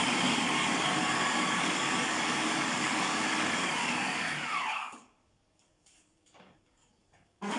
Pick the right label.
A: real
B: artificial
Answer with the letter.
B